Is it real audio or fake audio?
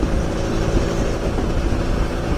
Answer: real